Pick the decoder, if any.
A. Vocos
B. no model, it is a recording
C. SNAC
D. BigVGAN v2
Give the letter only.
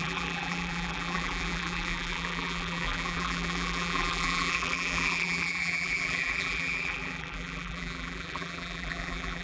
D